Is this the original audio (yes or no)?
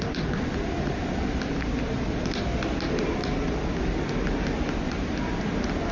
yes